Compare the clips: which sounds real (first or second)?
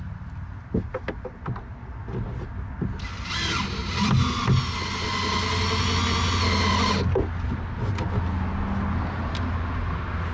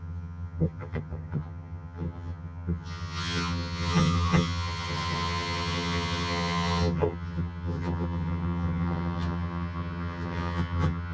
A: first